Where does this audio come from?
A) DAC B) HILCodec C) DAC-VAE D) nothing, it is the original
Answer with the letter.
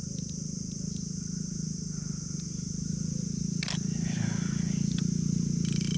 D